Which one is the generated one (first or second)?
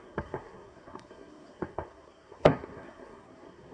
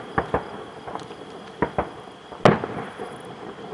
first